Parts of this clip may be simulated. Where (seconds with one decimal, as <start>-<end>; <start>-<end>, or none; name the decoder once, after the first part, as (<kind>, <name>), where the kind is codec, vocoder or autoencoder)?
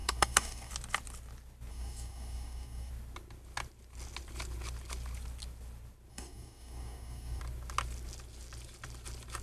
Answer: 0.0-0.7 (codec, DAC); 1.7-2.9; 6.1-7.4